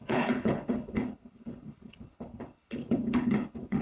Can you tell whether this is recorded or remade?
remade